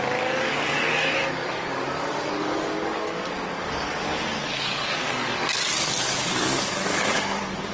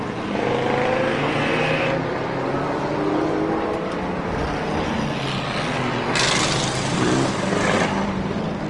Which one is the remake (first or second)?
first